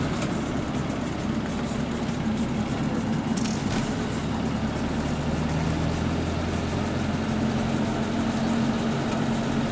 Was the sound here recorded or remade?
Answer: recorded